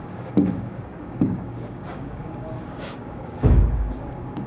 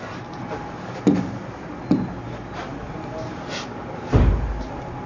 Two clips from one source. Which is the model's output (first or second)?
first